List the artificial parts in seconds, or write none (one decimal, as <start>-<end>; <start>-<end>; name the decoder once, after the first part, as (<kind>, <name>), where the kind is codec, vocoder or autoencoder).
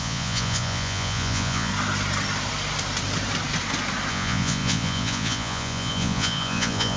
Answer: 0.0-1.7 (vocoder, Vocos); 4.1-7.0